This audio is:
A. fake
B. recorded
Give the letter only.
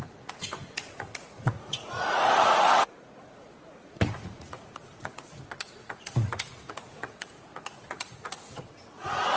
A